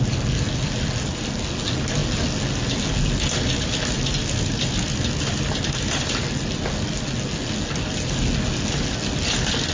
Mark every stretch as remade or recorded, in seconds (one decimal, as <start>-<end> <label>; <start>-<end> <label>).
0.0-9.7 recorded